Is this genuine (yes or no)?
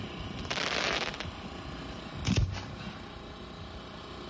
yes